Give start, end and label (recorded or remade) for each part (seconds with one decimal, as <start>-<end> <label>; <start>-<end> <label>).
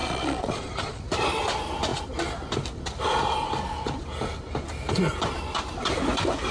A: 0.0-1.0 remade; 1.0-6.5 recorded